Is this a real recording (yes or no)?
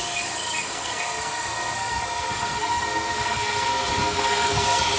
no